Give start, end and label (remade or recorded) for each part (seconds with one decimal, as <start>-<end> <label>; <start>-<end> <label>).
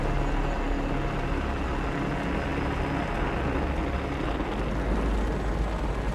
0.0-6.1 recorded